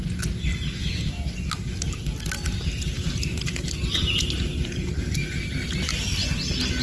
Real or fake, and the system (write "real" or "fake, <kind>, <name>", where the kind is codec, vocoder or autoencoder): real